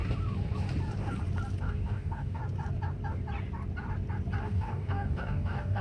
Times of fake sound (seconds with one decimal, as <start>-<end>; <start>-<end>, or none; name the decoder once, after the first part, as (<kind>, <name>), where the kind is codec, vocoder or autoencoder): 1.6-2.4 (codec, DAC); 4.4-5.8